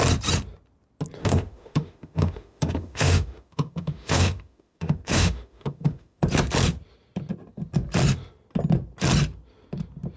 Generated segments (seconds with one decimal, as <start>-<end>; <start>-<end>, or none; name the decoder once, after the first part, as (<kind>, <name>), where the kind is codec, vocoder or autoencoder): 1.2-6.2 (autoencoder, DAC-VAE)